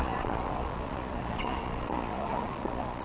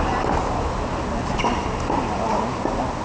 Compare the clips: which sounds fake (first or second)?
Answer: first